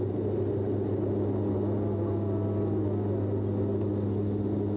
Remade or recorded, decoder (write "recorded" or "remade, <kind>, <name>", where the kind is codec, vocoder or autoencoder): recorded